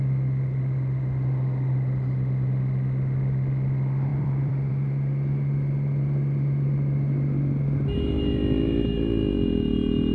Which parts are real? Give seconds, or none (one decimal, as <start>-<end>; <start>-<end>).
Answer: 0.0-4.1; 4.7-10.1